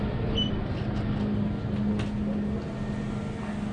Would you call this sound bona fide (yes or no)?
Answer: yes